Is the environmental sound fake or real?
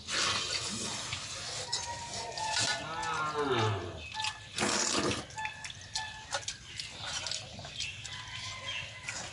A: real